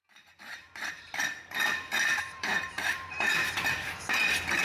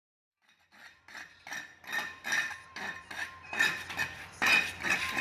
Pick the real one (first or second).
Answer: second